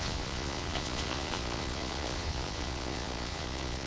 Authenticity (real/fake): fake